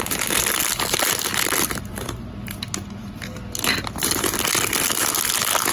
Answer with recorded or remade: recorded